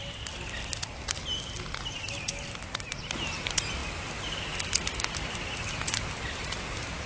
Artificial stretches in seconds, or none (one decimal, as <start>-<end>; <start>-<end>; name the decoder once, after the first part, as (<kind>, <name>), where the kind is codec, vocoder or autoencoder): none